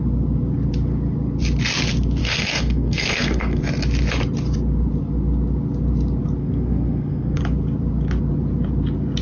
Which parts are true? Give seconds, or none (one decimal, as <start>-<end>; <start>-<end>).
0.0-2.2; 3.6-6.4; 7.4-9.2